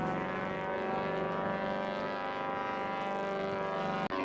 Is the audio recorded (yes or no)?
yes